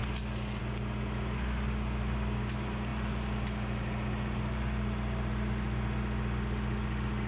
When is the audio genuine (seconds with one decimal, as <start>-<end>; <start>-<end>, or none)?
0.0-7.3